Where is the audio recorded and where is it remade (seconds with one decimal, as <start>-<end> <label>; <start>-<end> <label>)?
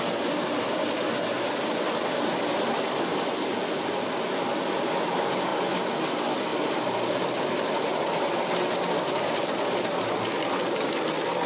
0.0-6.5 recorded; 6.5-7.9 remade; 7.9-11.5 recorded